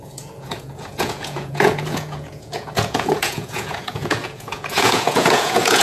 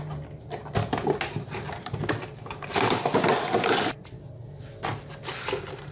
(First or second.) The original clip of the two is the second